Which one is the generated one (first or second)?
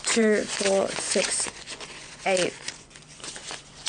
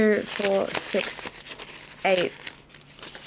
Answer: first